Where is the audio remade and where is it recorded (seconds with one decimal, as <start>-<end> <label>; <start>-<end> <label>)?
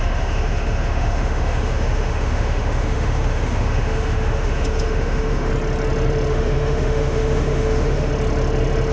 0.0-5.5 remade; 5.5-6.3 recorded; 6.3-8.1 remade; 8.1-8.9 recorded